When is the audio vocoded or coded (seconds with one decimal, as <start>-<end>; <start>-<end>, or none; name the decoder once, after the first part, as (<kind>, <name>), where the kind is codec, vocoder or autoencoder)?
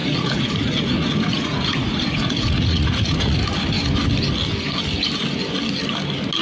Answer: 0.0-3.4 (vocoder, Vocos)